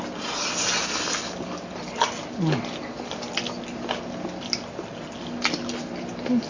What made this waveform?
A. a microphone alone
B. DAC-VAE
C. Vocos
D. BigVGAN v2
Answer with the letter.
A